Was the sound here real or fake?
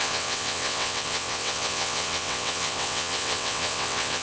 fake